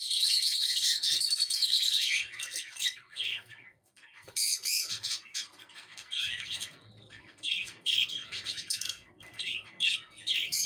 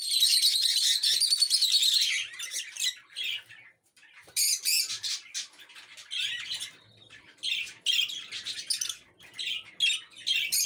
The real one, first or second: second